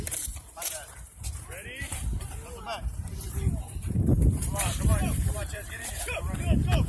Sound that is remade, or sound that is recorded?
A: remade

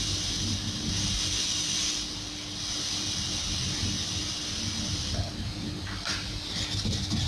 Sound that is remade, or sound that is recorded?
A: recorded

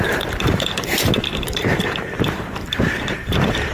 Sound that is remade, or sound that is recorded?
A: remade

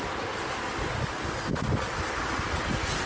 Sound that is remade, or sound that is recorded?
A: recorded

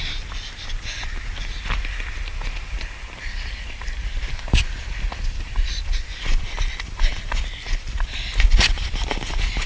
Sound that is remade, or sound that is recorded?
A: recorded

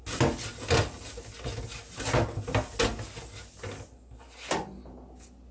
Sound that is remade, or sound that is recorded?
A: recorded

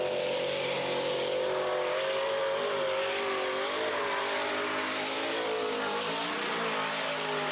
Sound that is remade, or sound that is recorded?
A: recorded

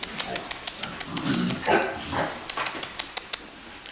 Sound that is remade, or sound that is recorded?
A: recorded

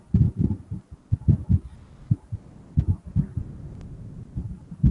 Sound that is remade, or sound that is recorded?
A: recorded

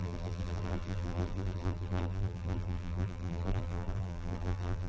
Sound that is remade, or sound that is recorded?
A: remade